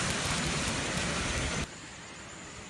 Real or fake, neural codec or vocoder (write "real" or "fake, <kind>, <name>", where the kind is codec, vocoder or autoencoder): real